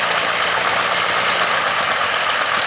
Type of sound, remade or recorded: recorded